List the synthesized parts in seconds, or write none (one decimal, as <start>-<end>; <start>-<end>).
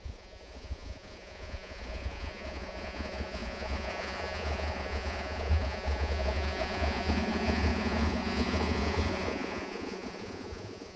0.0-11.0